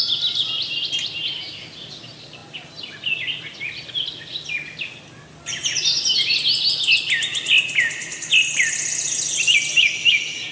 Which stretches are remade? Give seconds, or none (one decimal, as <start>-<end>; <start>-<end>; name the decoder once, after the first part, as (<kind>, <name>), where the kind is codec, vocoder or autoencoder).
none